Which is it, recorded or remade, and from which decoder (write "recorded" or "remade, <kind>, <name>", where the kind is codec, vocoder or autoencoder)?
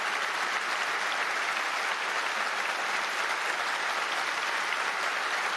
recorded